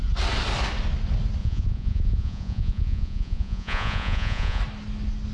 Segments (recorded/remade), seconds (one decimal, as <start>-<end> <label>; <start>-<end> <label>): 0.0-1.4 recorded; 1.4-4.6 remade; 4.6-5.3 recorded